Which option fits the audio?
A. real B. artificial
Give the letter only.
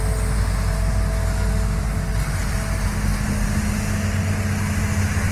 A